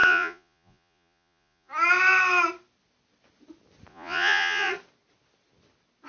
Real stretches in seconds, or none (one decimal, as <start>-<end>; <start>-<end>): 1.7-3.9; 4.7-6.1